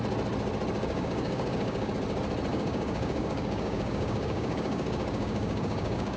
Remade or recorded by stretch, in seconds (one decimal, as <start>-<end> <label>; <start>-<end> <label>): 0.0-0.8 recorded; 0.8-1.9 remade; 1.9-2.5 recorded; 2.5-6.2 remade